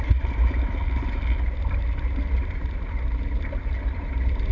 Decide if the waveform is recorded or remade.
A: recorded